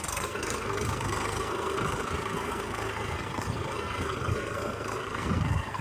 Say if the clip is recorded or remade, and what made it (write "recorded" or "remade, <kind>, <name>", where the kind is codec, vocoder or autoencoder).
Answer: remade, codec, SNAC